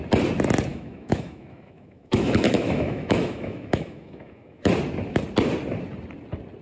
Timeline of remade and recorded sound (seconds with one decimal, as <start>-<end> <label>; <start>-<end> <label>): 0.0-0.7 recorded; 0.7-4.7 remade; 4.7-6.6 recorded